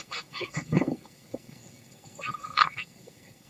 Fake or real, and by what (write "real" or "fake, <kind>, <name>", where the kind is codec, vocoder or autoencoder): fake, codec, SNAC